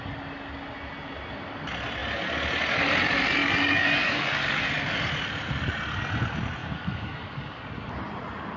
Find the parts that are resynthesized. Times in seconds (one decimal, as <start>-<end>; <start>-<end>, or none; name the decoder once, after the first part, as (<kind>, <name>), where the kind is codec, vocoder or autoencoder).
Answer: 3.4-4.6 (codec, DAC); 6.6-7.7